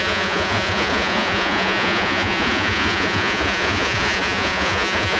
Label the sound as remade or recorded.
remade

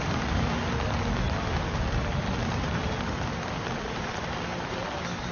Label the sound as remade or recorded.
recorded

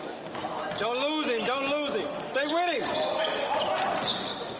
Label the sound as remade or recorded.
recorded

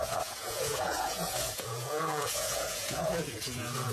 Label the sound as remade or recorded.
remade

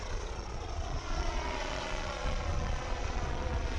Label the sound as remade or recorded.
remade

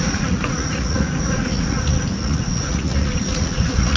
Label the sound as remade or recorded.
remade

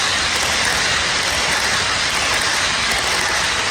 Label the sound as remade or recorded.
recorded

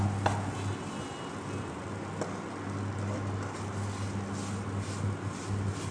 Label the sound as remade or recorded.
recorded